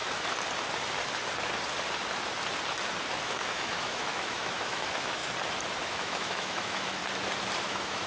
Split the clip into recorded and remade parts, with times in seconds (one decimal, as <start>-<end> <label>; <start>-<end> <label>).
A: 0.0-3.2 recorded; 3.2-5.2 remade; 5.2-5.8 recorded; 5.8-7.0 remade; 7.0-7.6 recorded; 7.6-8.1 remade